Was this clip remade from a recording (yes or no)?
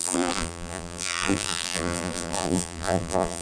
yes